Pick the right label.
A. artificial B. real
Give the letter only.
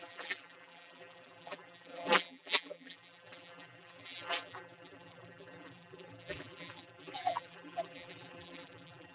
A